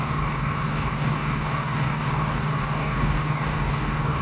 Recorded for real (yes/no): no